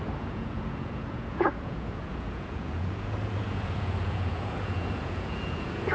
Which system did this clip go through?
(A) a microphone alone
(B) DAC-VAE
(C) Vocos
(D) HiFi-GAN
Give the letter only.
C